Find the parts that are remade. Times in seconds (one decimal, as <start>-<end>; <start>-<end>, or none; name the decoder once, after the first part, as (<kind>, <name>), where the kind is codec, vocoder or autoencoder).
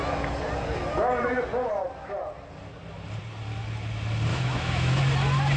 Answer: 4.3-5.0 (autoencoder, DAC-VAE)